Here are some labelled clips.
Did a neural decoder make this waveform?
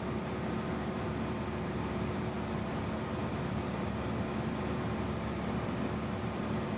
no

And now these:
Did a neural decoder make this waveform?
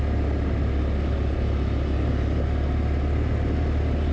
no